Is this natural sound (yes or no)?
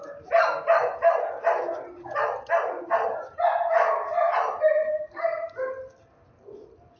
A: yes